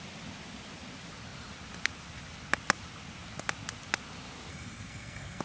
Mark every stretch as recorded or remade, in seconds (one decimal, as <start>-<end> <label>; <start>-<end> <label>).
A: 0.0-4.5 recorded; 4.5-5.4 remade